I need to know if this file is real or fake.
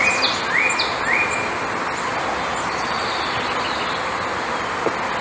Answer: real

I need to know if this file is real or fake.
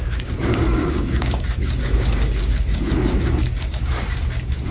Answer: fake